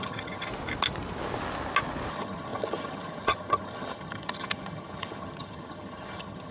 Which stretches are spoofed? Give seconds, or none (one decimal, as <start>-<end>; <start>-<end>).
0.0-0.5; 2.1-6.5